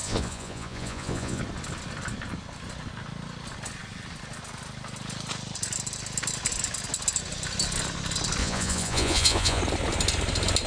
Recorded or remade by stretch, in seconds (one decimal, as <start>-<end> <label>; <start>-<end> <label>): 0.0-1.4 remade; 1.4-8.4 recorded; 8.4-9.6 remade; 9.6-10.7 recorded